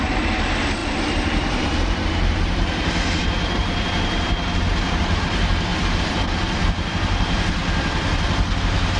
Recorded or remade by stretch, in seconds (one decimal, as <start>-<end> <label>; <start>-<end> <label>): 0.0-7.6 remade; 7.6-8.6 recorded; 8.6-9.0 remade